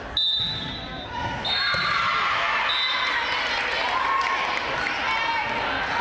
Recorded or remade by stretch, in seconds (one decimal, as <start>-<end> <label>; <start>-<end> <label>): 0.0-6.0 recorded